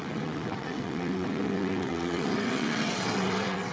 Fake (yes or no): yes